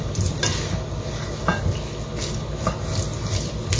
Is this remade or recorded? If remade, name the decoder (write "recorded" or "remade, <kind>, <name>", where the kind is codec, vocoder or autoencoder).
recorded